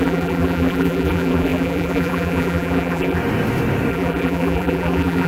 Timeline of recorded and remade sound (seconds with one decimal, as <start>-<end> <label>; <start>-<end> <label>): 0.0-3.2 remade; 3.2-3.9 recorded; 3.9-5.3 remade